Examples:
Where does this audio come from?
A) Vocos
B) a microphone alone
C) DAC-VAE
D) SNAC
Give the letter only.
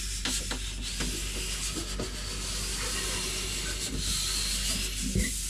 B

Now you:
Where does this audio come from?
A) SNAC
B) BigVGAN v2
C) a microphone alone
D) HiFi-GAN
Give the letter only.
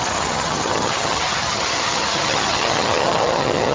D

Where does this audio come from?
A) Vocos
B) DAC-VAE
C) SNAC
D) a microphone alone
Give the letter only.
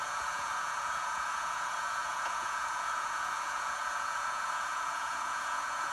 A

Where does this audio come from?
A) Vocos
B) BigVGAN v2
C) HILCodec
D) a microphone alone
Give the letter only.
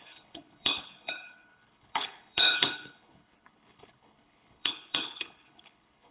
C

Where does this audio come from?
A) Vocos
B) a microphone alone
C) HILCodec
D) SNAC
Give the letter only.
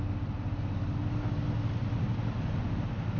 B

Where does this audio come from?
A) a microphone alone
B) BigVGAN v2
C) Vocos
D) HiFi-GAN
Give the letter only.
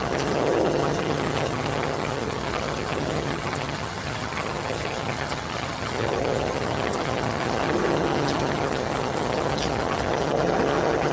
D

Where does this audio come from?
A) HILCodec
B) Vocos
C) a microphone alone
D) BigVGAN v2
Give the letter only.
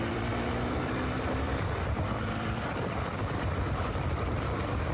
D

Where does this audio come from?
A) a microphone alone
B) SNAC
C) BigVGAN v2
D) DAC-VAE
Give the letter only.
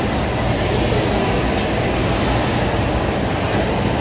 A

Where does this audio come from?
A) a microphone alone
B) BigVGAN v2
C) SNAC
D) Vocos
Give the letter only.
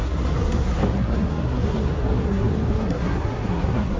C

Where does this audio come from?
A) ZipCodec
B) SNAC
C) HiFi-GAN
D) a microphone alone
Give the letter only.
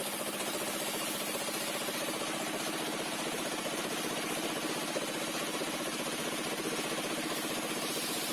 D